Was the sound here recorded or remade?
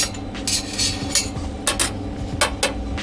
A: recorded